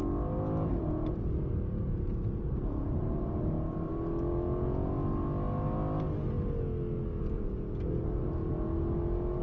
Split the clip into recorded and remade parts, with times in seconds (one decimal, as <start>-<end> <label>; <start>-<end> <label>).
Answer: 0.0-0.7 recorded; 0.7-3.9 remade; 3.9-7.2 recorded; 7.2-8.4 remade; 8.4-9.4 recorded